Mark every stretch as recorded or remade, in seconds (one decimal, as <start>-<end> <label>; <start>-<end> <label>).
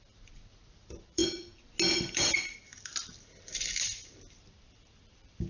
0.0-1.2 remade; 1.2-1.9 recorded; 1.9-5.5 remade